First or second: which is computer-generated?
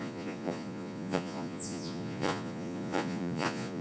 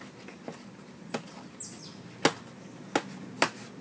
first